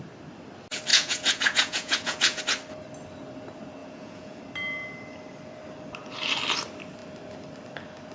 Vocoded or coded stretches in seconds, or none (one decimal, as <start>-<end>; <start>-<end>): 0.9-2.4; 3.8-4.4